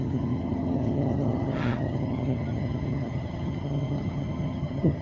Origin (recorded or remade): remade